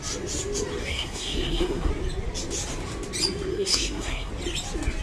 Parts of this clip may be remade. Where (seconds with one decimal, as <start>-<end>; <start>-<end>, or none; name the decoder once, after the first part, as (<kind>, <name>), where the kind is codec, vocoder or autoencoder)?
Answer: 0.8-1.9 (codec, SNAC); 3.5-4.3